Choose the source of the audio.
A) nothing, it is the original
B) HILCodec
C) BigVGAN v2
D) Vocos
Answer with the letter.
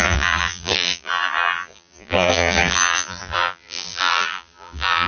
C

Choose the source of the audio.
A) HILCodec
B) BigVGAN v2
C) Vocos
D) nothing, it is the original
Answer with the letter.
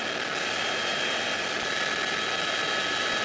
D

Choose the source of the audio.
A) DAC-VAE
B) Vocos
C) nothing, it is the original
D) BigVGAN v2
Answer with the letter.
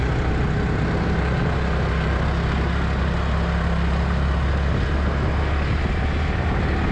C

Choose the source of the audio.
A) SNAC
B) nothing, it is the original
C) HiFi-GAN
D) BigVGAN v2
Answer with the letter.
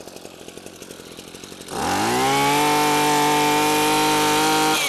B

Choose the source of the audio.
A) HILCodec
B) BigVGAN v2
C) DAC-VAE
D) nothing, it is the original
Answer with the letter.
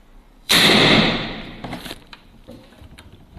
B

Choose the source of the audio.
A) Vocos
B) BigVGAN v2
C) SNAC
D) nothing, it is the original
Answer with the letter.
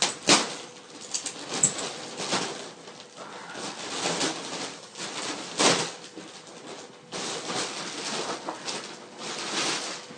D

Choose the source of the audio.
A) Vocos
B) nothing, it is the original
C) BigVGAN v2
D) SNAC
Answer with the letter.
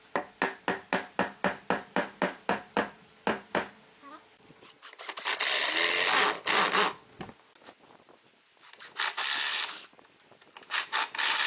B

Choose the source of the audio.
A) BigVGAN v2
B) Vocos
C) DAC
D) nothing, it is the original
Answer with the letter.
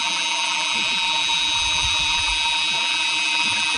A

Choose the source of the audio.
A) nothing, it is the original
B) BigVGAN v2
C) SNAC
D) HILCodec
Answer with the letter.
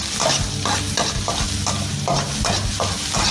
A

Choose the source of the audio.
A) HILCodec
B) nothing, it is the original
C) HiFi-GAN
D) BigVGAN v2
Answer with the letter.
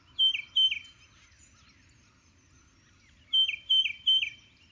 B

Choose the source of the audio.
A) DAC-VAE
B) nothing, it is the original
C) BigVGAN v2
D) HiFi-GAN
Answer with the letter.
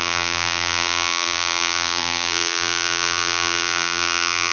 C